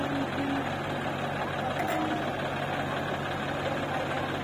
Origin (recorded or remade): recorded